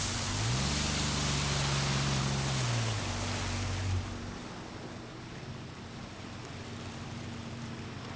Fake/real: real